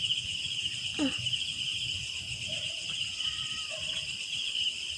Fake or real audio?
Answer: real